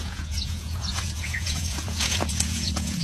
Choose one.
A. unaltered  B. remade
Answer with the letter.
B